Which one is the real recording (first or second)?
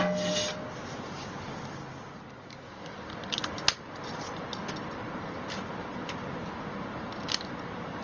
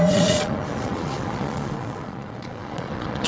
first